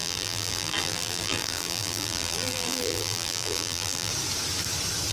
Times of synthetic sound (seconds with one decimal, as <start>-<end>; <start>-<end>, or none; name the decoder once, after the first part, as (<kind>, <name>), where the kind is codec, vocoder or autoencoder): 0.0-4.1 (vocoder, BigVGAN v2)